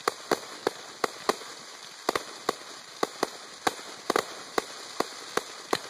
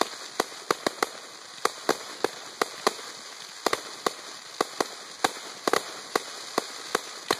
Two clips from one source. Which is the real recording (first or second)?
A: second